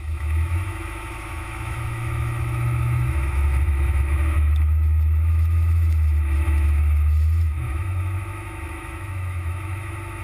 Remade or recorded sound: remade